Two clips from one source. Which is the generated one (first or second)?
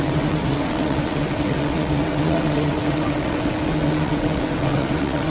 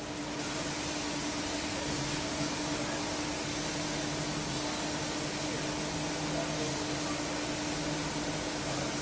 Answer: first